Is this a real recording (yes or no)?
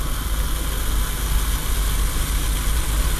yes